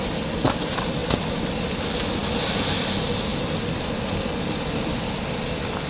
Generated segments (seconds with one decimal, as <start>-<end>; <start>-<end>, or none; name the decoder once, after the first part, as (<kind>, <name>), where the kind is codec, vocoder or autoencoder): none